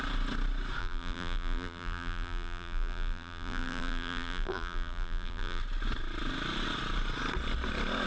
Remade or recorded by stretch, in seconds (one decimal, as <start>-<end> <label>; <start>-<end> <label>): 0.0-0.8 recorded; 0.8-5.6 remade; 5.6-8.1 recorded